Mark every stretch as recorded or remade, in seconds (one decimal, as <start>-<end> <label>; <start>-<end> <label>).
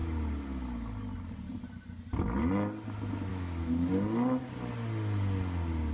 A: 0.0-3.3 recorded; 3.3-3.9 remade; 3.9-5.9 recorded